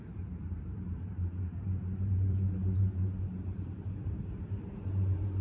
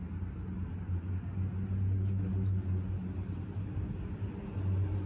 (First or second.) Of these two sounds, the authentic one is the second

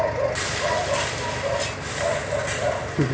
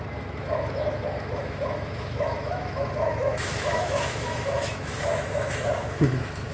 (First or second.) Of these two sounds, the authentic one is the first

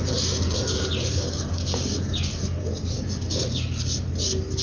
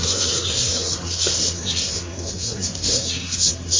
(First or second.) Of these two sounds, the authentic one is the first